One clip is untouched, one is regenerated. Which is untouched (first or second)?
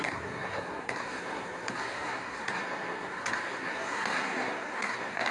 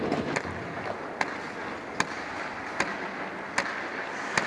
second